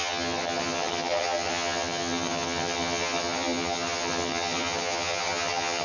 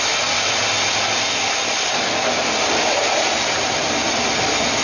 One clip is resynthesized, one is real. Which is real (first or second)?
second